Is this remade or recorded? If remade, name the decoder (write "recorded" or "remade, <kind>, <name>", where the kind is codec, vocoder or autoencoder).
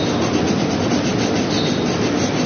recorded